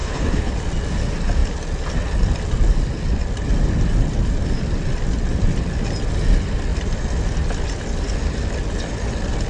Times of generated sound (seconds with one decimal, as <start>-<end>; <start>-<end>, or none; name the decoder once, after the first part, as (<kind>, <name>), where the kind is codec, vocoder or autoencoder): 0.0-0.5 (codec, HILCodec)